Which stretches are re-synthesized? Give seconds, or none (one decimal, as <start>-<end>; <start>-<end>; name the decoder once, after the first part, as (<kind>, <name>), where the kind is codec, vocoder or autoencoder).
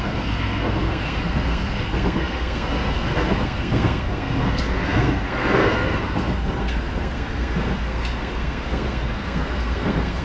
0.0-10.2 (codec, SNAC)